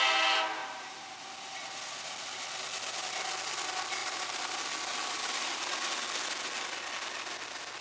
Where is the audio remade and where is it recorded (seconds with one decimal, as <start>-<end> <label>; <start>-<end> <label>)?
0.0-0.6 recorded; 0.6-1.2 remade; 1.2-4.0 recorded; 4.0-4.5 remade; 4.5-4.9 recorded; 4.9-5.7 remade; 5.7-7.8 recorded